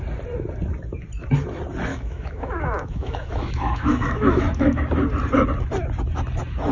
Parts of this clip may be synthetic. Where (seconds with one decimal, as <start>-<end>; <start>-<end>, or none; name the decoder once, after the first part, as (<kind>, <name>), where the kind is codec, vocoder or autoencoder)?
1.9-4.8 (autoencoder, DAC-VAE)